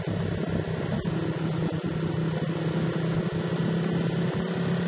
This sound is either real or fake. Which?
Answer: real